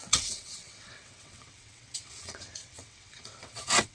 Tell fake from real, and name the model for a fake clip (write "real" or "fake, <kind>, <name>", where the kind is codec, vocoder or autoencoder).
fake, vocoder, WaveNeXt